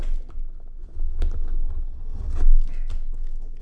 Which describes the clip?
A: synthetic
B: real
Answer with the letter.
B